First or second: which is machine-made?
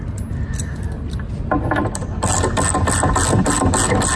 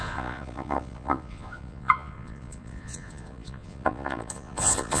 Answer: second